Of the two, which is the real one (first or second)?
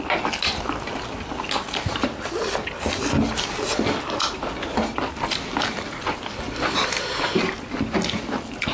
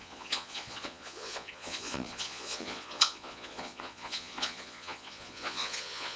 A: first